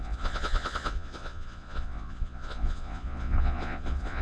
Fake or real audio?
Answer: fake